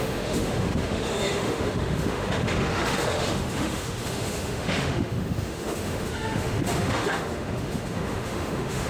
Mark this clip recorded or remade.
remade